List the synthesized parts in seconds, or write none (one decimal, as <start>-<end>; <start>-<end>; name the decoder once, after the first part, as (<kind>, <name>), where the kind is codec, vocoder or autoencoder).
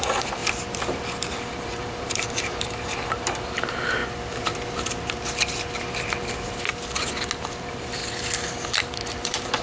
0.0-0.4 (vocoder, BigVGAN v2); 1.3-4.0; 7.6-8.0; 8.9-9.6